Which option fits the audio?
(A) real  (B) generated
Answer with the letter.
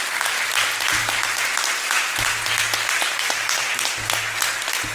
A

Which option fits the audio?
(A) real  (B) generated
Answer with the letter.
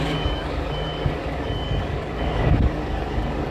B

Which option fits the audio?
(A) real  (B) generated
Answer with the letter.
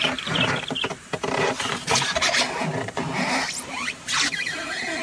B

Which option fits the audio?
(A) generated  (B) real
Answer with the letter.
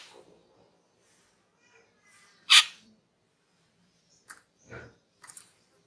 A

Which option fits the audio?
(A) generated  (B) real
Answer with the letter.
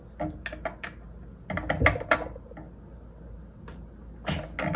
B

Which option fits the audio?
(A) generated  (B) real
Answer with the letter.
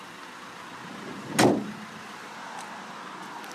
B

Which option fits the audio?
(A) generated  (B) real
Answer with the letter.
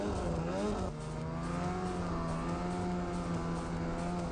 B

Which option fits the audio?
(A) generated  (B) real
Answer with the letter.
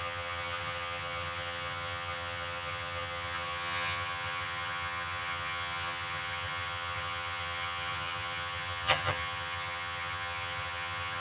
A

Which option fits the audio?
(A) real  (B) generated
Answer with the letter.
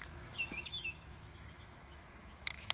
B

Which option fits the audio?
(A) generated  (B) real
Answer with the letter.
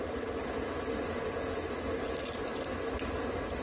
B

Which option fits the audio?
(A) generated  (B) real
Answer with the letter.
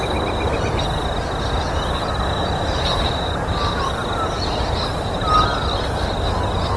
B